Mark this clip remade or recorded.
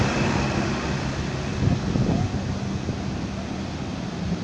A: recorded